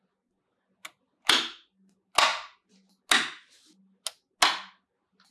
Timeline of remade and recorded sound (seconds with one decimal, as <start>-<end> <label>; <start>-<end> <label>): 0.0-5.3 recorded